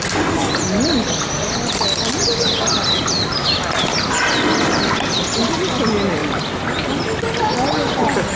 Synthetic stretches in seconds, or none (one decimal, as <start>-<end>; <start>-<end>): none